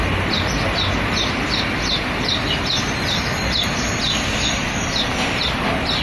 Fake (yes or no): no